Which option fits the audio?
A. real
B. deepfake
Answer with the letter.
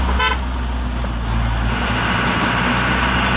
A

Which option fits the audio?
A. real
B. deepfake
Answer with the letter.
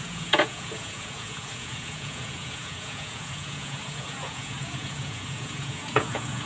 B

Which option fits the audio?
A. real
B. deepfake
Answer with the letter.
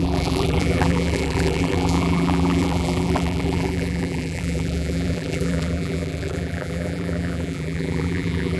B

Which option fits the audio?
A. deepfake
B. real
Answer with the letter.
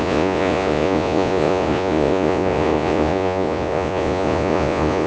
A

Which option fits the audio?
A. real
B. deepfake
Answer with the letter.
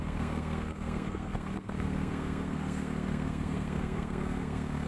B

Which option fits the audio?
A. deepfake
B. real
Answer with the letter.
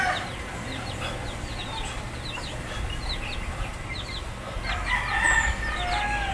B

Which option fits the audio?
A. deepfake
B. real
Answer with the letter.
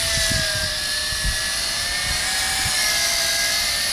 B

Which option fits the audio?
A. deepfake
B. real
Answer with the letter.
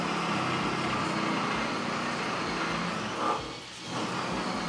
B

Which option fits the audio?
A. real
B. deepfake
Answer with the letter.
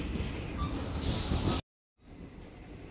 A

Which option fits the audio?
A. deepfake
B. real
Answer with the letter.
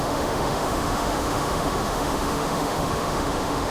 A